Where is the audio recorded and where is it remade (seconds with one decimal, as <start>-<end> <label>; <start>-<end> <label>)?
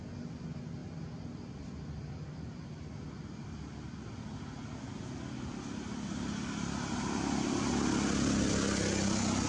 0.0-9.5 recorded